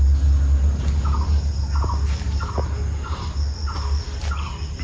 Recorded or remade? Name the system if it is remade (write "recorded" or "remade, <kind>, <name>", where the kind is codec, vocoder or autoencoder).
recorded